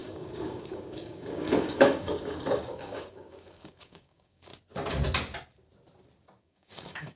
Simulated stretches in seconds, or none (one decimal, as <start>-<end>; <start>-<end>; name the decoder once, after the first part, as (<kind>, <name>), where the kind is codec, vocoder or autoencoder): 0.0-4.5 (codec, DAC); 6.4-7.2